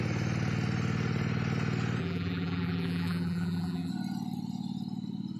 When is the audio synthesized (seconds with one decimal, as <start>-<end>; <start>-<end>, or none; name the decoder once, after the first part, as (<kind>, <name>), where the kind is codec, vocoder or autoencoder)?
2.0-3.9 (vocoder, BigVGAN v2)